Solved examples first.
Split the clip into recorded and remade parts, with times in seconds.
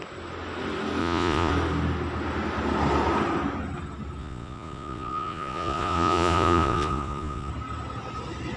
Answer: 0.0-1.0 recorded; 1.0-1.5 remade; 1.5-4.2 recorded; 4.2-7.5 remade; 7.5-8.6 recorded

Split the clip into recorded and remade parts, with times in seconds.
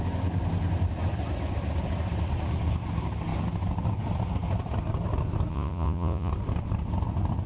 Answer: 0.0-5.5 recorded; 5.5-6.3 remade; 6.3-7.5 recorded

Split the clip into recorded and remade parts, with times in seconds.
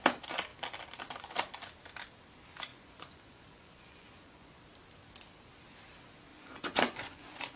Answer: 0.0-2.7 recorded; 2.7-4.5 remade; 4.5-6.3 recorded; 6.3-7.6 remade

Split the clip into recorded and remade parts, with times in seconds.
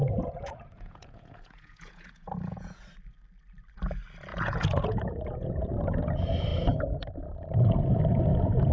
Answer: 0.0-2.8 remade; 2.8-4.3 recorded; 4.3-5.7 remade; 5.7-8.7 recorded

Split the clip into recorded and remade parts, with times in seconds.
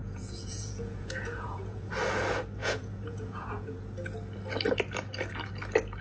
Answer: 0.0-1.9 remade; 1.9-2.6 recorded; 2.6-3.8 remade; 3.8-6.0 recorded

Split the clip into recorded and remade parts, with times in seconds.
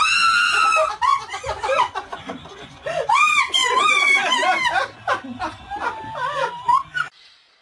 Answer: 0.0-1.1 recorded; 1.1-4.4 remade; 4.4-7.6 recorded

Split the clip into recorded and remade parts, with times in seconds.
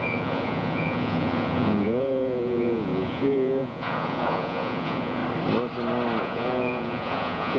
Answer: 0.0-5.2 remade; 5.2-6.2 recorded; 6.2-7.6 remade